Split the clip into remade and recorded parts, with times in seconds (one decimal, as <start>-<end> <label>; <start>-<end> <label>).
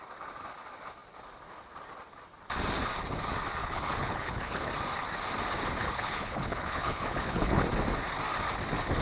0.0-3.6 recorded; 3.6-4.7 remade; 4.7-5.8 recorded; 5.8-7.6 remade; 7.6-9.0 recorded